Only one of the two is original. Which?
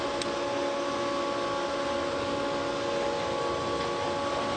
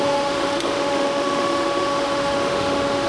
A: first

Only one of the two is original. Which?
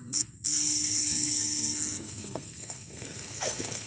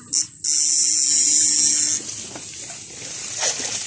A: second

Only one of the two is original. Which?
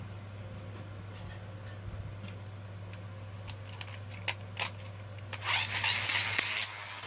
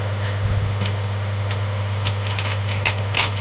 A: first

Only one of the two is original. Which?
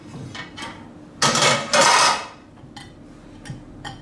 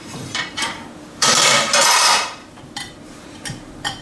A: first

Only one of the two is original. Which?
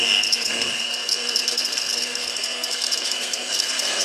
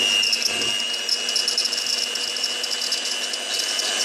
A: second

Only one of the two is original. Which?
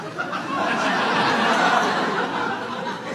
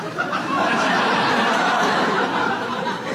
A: first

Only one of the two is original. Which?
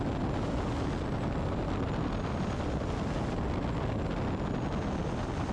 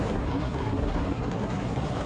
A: first